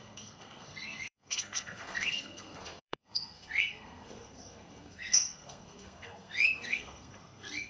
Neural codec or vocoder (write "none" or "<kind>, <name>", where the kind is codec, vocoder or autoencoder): codec, SNAC